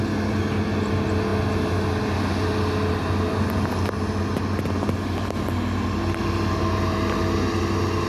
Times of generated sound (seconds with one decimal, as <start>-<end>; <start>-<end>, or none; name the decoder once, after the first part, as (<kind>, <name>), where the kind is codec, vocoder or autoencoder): none